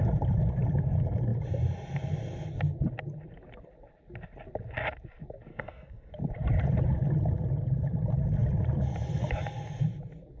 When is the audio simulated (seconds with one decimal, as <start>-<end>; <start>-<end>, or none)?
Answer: 5.5-6.1